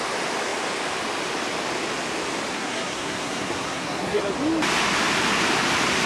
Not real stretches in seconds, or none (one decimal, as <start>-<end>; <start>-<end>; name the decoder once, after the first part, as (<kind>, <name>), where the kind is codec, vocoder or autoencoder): 2.5-4.2 (codec, SNAC)